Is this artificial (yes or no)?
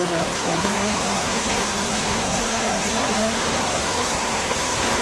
yes